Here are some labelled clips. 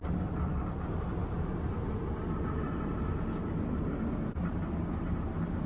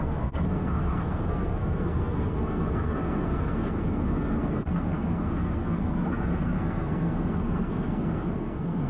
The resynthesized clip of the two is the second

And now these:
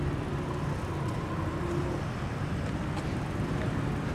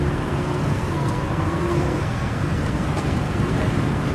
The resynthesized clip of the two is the second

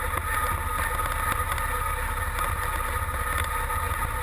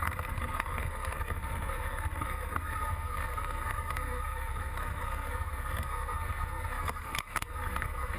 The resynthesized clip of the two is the second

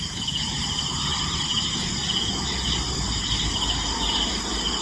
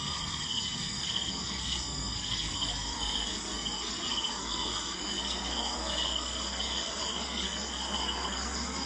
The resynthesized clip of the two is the second